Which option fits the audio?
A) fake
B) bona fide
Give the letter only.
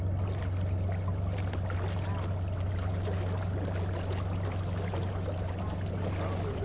B